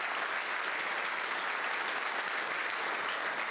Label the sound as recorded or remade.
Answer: recorded